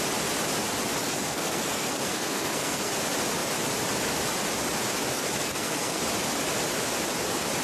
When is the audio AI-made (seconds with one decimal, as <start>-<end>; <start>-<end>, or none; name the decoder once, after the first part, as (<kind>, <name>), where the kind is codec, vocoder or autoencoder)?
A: 1.0-2.9 (codec, SNAC); 5.1-6.0